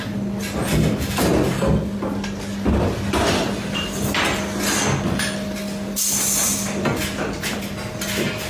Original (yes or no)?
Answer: yes